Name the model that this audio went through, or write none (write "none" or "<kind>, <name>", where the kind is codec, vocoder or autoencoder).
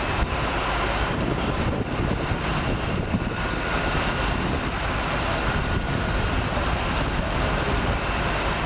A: vocoder, BigVGAN v2